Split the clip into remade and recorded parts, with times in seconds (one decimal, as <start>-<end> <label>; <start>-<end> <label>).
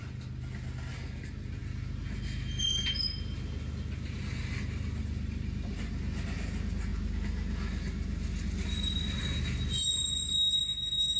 0.0-11.2 recorded